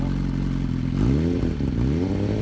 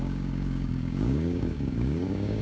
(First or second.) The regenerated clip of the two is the second